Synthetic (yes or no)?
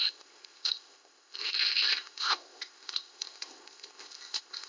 yes